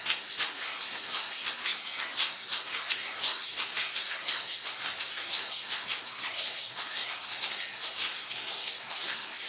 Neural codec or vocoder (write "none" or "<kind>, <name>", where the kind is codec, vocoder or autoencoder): codec, SNAC